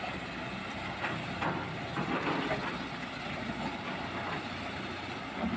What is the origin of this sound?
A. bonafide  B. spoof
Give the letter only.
A